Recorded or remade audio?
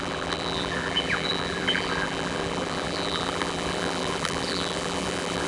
remade